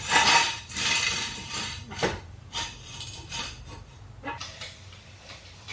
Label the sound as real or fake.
fake